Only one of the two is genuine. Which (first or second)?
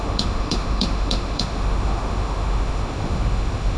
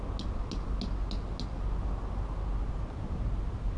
second